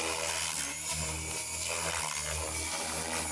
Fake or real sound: real